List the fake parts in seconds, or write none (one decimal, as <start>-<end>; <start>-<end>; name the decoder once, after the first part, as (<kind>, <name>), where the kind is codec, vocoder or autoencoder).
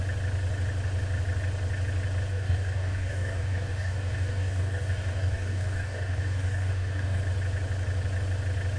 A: 2.3-7.2 (codec, DAC)